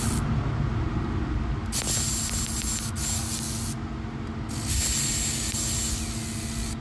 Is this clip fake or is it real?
real